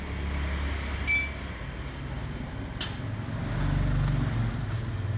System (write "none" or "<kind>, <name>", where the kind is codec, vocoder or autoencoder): none